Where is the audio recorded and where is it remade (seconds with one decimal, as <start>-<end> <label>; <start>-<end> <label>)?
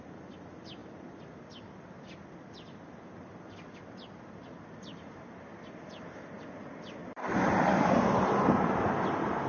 0.0-9.5 recorded